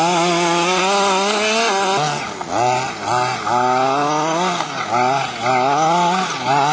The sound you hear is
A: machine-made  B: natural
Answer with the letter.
B